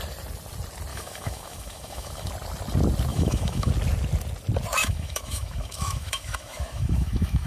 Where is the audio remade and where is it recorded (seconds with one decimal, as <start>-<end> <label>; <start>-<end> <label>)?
0.0-0.9 recorded; 0.9-2.3 remade; 2.3-3.1 recorded; 3.1-3.7 remade; 3.7-4.8 recorded; 4.8-7.5 remade